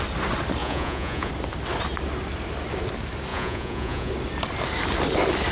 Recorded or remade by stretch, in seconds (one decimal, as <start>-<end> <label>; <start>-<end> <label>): 0.0-0.6 recorded; 0.6-1.3 remade; 1.3-3.3 recorded; 3.3-4.1 remade; 4.1-5.5 recorded